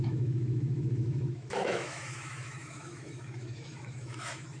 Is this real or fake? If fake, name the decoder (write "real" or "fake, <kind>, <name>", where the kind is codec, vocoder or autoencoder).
fake, autoencoder, DAC-VAE